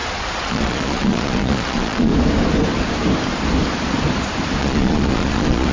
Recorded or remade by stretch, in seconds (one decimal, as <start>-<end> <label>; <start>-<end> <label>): 0.0-2.1 remade; 2.1-4.6 recorded; 4.6-5.7 remade